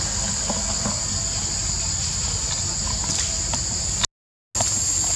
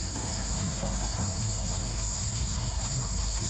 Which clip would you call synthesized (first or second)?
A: second